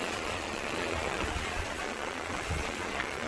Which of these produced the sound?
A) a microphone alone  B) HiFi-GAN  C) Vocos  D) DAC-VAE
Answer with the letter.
C